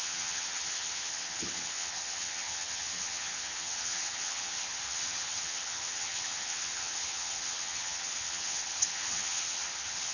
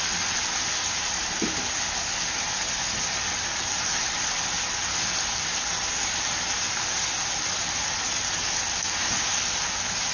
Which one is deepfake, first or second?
first